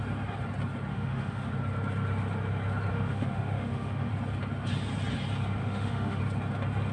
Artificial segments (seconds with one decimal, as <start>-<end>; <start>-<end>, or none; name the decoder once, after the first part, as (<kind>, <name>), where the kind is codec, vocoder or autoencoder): 0.9-1.5 (autoencoder, DAC-VAE); 2.9-4.1; 5.6-6.2